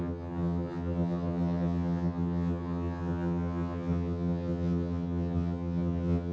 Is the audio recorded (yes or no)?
no